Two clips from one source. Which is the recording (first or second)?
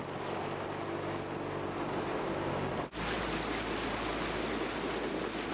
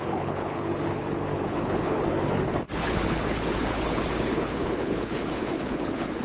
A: first